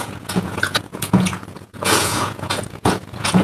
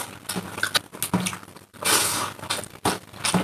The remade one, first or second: first